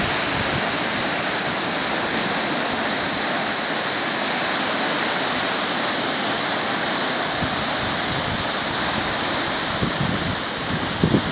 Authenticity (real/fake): real